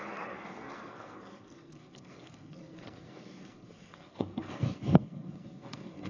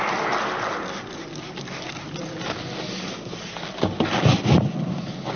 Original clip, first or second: second